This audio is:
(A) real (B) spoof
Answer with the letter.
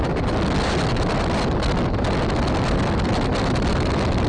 A